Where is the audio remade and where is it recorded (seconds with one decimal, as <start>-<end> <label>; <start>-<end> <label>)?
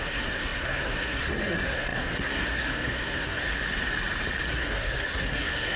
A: 0.0-3.5 remade; 3.5-4.5 recorded; 4.5-5.8 remade